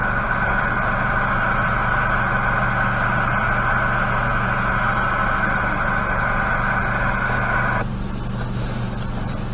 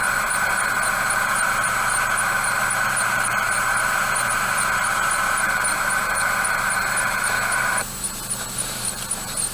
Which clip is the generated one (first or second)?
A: second